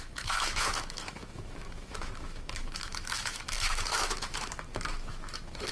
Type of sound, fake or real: fake